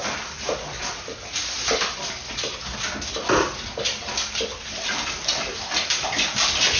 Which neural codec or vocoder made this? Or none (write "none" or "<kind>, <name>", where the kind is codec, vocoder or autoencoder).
none